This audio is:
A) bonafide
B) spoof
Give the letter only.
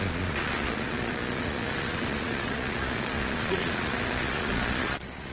B